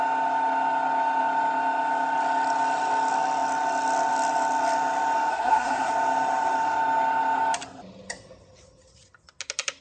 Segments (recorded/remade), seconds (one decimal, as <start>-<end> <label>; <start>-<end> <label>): 0.0-5.3 recorded; 5.3-5.9 remade; 5.9-9.8 recorded